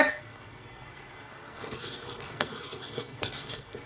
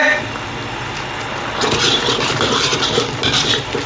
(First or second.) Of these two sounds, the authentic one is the second